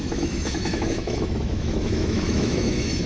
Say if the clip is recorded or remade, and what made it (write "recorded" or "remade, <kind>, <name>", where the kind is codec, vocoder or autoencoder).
remade, autoencoder, DAC-VAE